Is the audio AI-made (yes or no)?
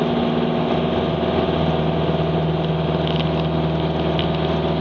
no